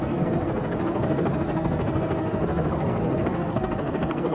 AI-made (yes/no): yes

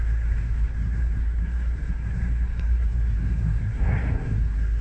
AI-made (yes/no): yes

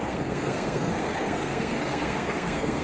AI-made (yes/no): yes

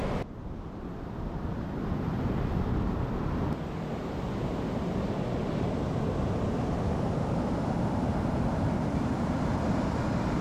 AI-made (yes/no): no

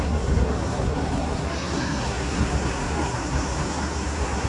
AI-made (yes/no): yes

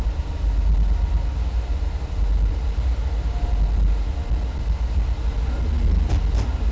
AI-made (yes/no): no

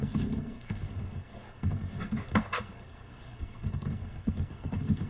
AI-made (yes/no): yes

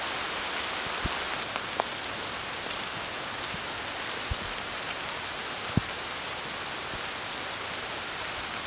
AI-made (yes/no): no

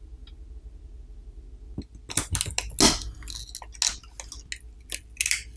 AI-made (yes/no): no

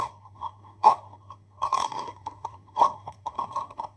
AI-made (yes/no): yes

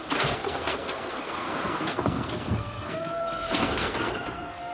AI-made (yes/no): yes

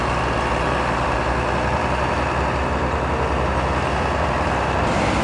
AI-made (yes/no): no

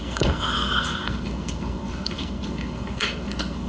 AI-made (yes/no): yes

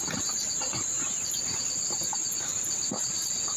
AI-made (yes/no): no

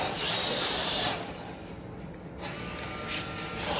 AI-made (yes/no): no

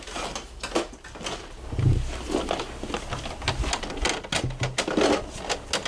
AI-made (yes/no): no